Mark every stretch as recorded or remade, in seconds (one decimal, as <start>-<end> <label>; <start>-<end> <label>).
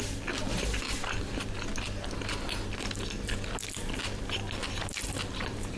0.0-4.6 recorded; 4.6-5.8 remade